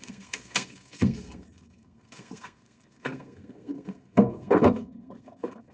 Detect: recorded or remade remade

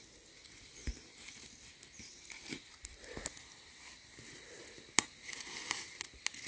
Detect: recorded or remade recorded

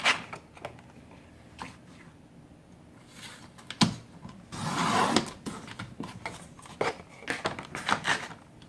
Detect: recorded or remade recorded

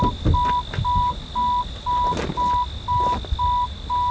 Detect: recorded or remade recorded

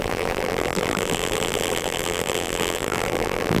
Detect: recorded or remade remade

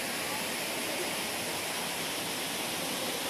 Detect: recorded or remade recorded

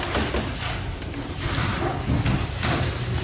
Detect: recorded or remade recorded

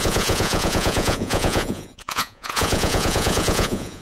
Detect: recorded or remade remade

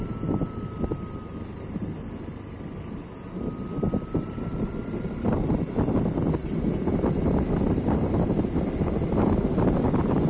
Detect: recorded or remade recorded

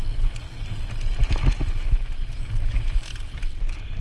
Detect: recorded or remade recorded